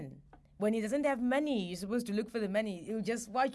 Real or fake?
real